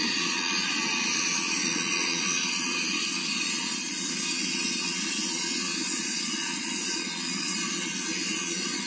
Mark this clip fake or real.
fake